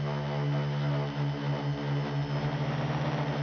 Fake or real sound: real